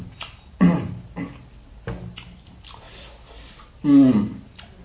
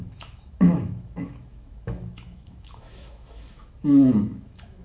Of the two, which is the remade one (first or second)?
second